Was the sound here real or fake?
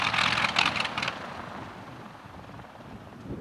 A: real